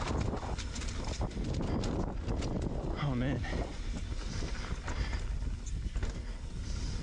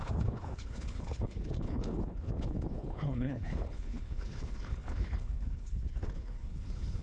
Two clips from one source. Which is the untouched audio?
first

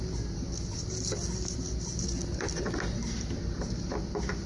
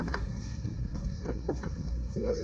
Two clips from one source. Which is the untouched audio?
first